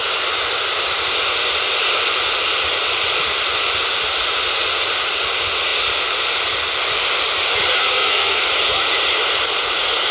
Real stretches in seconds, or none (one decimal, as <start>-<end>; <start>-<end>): 0.0-7.8; 8.4-10.1